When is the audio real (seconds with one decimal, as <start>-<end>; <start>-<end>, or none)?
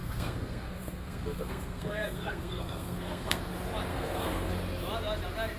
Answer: 3.4-3.9; 4.5-5.6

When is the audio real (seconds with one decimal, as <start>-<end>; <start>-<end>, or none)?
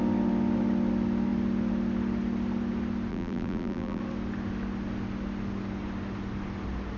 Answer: 0.0-3.1; 4.0-7.0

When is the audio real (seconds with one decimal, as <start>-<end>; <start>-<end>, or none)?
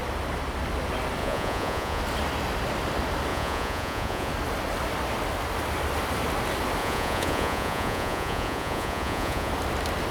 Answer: 0.0-1.2; 2.0-3.3; 4.3-6.8; 9.5-10.1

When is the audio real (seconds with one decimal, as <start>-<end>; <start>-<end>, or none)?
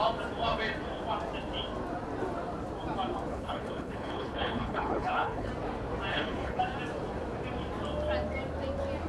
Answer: 0.0-3.3; 5.5-6.1; 6.6-9.1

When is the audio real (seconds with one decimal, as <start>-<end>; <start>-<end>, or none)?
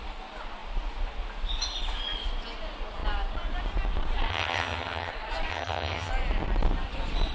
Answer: 0.0-4.3; 5.1-5.5; 6.1-7.3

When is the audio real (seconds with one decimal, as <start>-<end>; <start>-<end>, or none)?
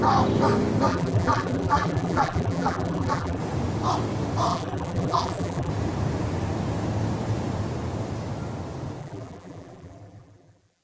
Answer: 0.0-0.9; 3.4-4.5; 5.7-9.0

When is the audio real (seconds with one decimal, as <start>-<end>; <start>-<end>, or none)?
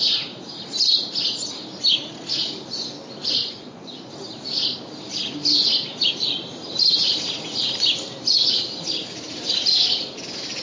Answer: 0.0-3.4; 4.1-10.6